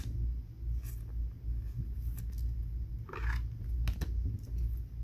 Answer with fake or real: real